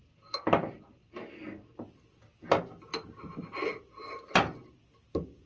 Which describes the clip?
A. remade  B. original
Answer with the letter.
B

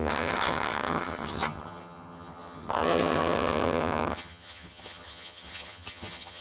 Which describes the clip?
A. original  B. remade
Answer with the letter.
B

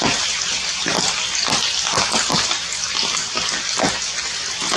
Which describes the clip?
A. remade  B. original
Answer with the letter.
B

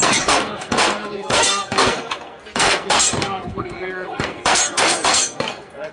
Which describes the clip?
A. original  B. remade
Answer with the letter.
B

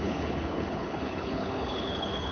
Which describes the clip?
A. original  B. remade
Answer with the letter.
B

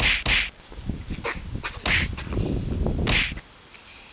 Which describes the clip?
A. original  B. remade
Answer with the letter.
A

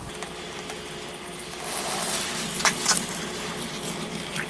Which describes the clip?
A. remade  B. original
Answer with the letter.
B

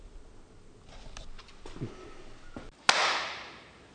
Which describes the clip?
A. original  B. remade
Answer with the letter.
A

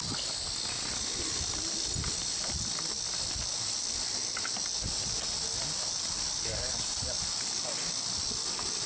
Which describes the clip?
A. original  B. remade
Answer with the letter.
A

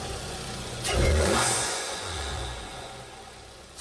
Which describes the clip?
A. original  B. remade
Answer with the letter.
B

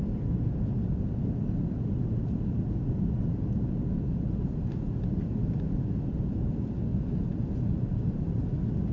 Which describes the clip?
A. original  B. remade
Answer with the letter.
A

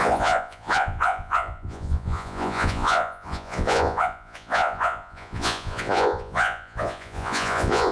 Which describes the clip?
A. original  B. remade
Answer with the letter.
B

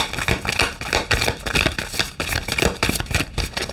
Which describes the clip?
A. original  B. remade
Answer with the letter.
A